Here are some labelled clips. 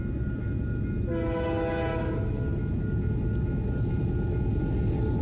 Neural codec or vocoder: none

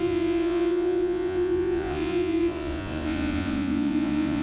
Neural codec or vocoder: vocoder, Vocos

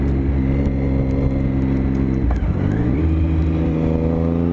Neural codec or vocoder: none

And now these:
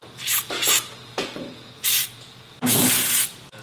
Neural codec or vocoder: vocoder, Vocos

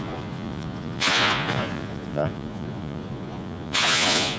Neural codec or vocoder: vocoder, Vocos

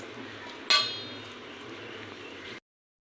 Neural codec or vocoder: none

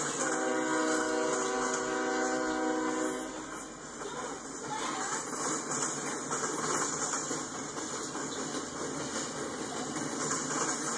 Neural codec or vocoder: none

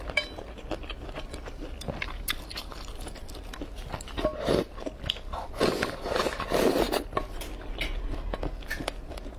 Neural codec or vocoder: none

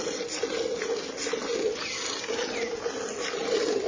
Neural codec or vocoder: none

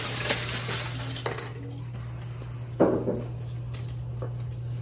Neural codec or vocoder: none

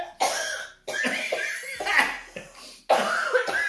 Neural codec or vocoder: none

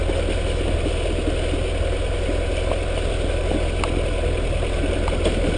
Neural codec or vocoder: none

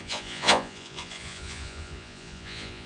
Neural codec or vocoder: vocoder, Vocos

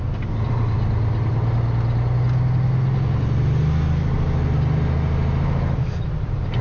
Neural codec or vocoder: none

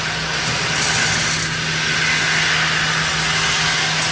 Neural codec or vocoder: none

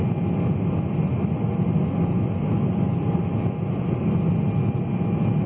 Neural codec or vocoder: none